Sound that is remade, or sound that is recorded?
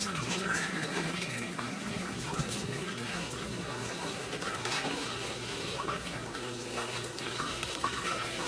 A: remade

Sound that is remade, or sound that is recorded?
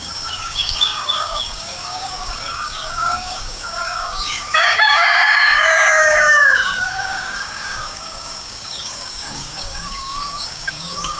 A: remade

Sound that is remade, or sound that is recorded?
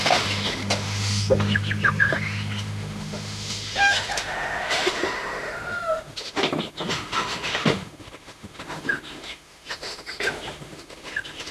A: remade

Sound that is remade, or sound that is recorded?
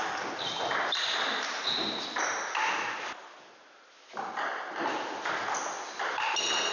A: recorded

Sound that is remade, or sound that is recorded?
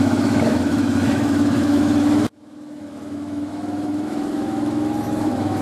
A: remade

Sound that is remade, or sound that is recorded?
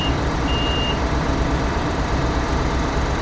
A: remade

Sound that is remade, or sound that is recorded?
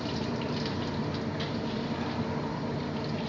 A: recorded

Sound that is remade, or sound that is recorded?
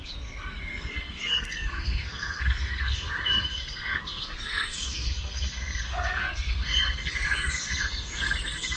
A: remade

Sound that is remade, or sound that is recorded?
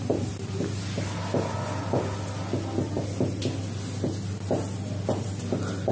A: recorded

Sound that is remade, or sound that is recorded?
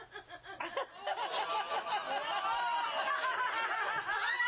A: recorded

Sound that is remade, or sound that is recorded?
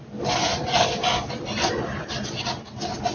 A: recorded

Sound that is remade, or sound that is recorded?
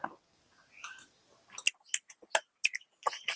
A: recorded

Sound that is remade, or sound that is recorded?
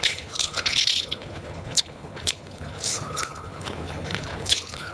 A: remade